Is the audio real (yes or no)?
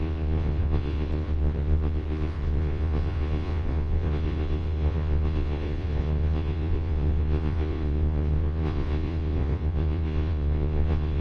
no